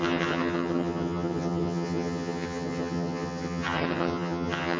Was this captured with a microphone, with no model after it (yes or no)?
no